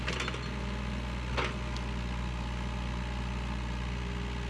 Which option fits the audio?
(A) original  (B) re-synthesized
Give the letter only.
A